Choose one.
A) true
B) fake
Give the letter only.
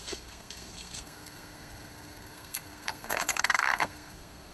B